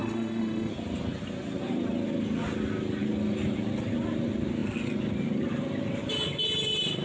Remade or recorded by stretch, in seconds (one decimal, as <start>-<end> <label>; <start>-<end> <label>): 0.0-0.7 remade; 0.7-7.0 recorded